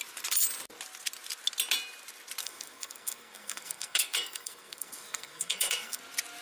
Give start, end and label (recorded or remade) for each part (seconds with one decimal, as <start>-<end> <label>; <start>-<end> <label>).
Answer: 0.0-2.4 recorded; 2.4-6.0 remade; 6.0-6.4 recorded